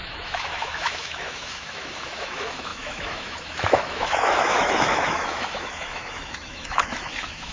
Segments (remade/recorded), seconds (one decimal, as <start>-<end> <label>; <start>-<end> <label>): 0.0-7.5 remade